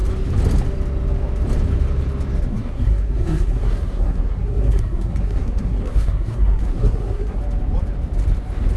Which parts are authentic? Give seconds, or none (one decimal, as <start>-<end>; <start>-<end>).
0.0-2.5; 7.4-8.8